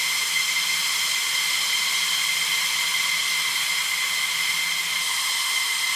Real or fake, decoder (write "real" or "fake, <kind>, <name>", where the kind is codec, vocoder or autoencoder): real